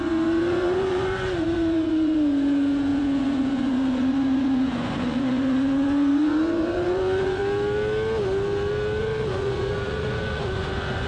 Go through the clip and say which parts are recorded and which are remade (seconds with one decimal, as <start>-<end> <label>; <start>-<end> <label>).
0.0-7.4 remade; 7.4-9.0 recorded; 9.0-11.1 remade